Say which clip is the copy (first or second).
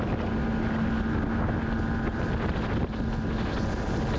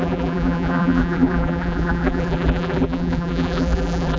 second